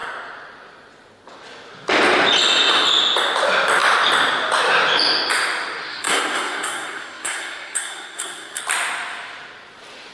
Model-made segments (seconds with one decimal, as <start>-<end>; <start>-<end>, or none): 5.9-8.6